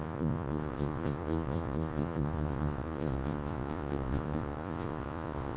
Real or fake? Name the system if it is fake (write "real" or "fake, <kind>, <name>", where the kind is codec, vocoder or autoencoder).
fake, vocoder, Vocos